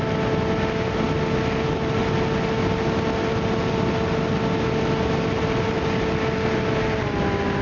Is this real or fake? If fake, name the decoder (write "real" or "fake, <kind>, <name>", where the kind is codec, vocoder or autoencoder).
real